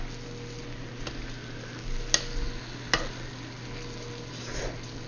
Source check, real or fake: real